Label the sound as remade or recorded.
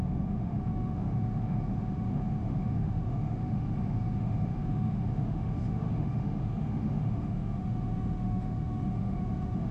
remade